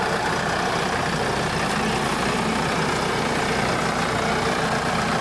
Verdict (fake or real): real